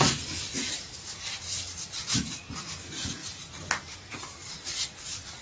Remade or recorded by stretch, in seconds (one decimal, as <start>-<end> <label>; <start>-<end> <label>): 0.0-0.5 recorded; 0.5-2.4 remade; 2.4-5.4 recorded